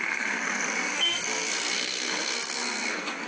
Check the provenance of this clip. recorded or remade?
remade